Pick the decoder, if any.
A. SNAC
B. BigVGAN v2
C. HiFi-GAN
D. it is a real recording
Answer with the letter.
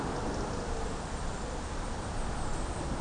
D